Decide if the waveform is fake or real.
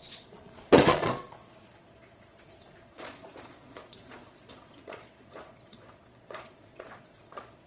fake